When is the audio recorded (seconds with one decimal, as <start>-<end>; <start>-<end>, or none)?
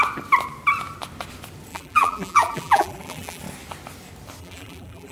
0.0-1.7; 3.4-4.4